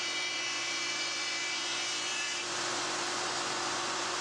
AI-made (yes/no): yes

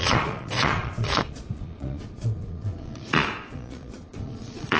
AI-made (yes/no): yes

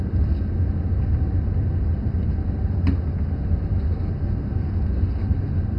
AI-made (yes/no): no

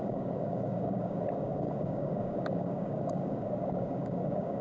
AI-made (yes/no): yes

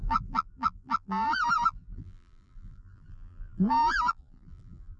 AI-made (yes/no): yes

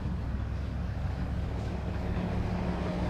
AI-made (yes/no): yes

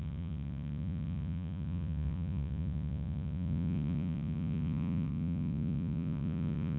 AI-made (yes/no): yes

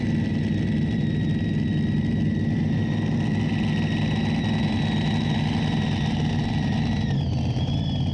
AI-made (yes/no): no